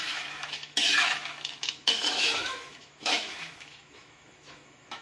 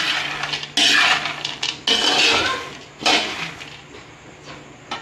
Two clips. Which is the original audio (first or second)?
second